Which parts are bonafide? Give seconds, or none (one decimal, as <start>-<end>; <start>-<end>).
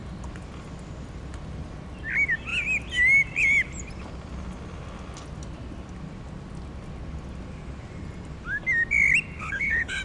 0.0-9.4